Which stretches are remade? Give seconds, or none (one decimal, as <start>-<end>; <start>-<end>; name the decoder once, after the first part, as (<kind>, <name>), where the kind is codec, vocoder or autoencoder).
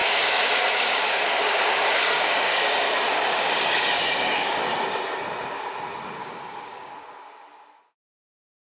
0.0-4.6 (codec, DAC); 6.2-6.9